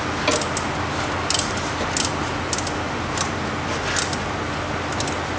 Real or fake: real